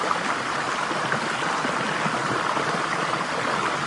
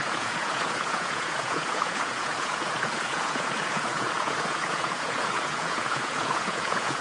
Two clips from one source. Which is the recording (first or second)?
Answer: first